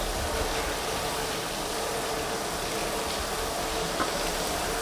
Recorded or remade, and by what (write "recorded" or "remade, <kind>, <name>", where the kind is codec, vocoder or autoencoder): recorded